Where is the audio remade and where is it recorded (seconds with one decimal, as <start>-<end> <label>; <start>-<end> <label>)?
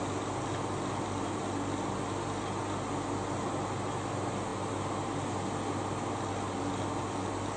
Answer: 0.0-7.6 recorded